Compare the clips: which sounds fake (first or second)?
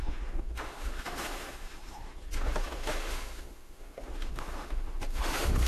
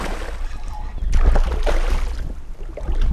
first